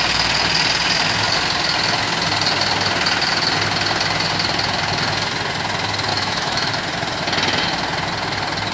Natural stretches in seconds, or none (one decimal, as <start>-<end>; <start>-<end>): 0.0-6.1; 6.7-8.7